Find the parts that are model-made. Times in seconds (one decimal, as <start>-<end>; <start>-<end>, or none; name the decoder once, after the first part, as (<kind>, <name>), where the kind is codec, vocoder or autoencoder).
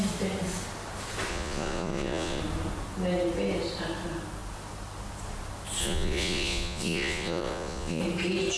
1.3-2.4 (vocoder, Vocos); 5.8-8.0